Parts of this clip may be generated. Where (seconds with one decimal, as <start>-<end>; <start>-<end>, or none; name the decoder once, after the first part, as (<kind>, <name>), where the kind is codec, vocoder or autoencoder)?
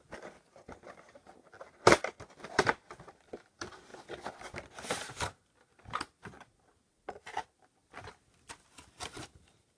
none